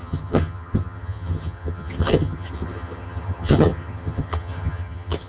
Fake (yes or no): yes